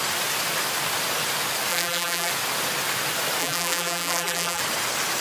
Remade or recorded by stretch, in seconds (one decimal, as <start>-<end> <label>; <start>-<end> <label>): 0.0-1.7 recorded; 1.7-2.3 remade; 2.3-3.4 recorded; 3.4-4.6 remade; 4.6-5.2 recorded

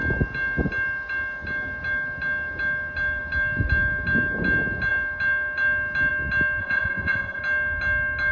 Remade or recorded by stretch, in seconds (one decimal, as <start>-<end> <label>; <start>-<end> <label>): 0.0-6.6 recorded; 6.6-7.4 remade; 7.4-8.3 recorded

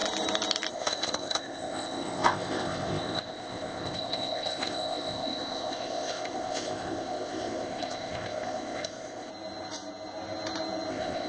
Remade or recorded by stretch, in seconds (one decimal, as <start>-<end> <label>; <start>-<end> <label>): 0.0-0.7 recorded; 0.7-9.3 remade; 9.3-10.9 recorded; 10.9-11.3 remade

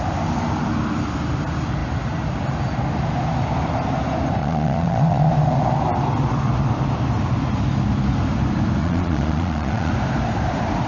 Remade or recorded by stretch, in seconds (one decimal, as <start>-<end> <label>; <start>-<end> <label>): 0.0-4.4 recorded; 4.4-5.3 remade; 5.3-8.8 recorded; 8.8-9.9 remade; 9.9-10.9 recorded

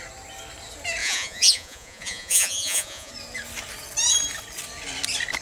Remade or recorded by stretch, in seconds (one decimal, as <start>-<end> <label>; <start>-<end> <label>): 0.0-1.0 recorded; 1.0-3.1 remade; 3.1-5.4 recorded